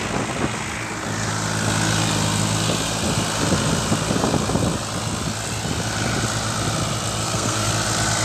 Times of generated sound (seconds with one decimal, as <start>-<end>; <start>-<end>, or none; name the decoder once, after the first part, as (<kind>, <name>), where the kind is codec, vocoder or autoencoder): 7.2-7.7 (codec, SNAC)

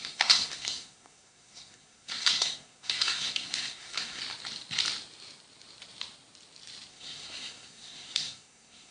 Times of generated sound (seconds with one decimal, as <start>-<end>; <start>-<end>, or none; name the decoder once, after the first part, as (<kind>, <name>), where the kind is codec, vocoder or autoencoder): 0.0-4.2 (codec, SNAC); 6.9-8.9

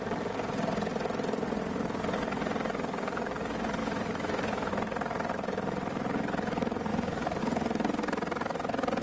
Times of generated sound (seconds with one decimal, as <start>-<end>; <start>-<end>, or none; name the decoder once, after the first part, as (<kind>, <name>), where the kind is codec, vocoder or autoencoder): 3.8-4.7 (autoencoder, DAC-VAE); 6.9-7.4

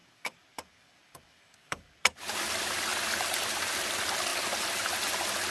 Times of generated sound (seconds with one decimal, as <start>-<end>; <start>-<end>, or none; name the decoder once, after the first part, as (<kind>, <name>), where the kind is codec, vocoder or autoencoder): 0.0-2.0 (codec, DAC)

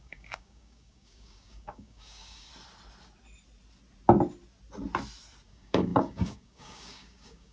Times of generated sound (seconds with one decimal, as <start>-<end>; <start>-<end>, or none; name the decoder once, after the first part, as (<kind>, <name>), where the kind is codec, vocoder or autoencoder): 0.0-2.5 (codec, DAC); 5.5-7.5

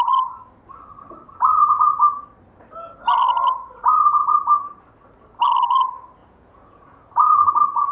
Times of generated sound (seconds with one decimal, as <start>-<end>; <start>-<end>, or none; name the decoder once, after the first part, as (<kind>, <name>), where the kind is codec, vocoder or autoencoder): 6.2-7.5 (vocoder, Vocos)

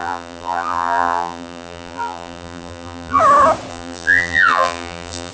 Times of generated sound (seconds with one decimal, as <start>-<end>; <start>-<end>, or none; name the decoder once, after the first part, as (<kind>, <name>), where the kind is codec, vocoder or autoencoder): 0.0-3.2 (vocoder, BigVGAN v2); 3.7-5.3